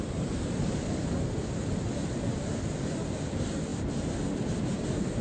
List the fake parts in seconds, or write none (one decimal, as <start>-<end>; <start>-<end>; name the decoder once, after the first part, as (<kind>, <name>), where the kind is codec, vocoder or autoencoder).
0.0-1.4 (vocoder, BigVGAN v2); 3.3-5.2